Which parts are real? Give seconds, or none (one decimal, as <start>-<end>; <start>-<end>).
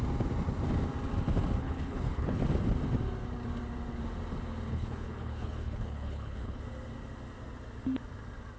0.0-1.6; 2.4-4.7; 6.6-8.6